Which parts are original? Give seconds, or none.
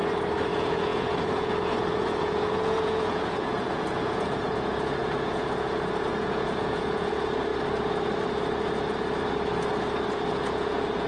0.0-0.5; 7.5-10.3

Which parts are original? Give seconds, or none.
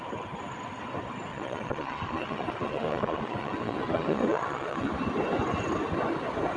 0.0-1.3; 4.9-6.6